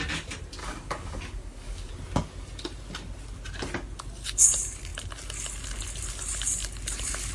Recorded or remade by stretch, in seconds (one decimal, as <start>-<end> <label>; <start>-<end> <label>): 0.0-0.6 recorded; 0.6-1.9 remade; 1.9-7.3 recorded